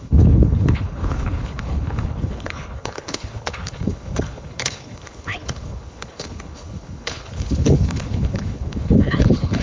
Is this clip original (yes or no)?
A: no